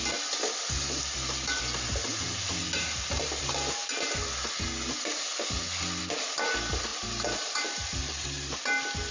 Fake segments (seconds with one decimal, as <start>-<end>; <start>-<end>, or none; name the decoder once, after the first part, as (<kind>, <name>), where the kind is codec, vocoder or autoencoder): 2.6-3.5 (vocoder, BigVGAN v2); 6.9-8.6